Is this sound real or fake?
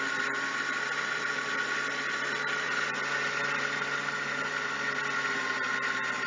real